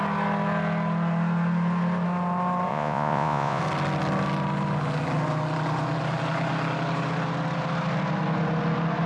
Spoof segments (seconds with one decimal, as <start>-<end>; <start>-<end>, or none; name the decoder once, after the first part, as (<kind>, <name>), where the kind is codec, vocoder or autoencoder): 2.7-3.6 (vocoder, Vocos)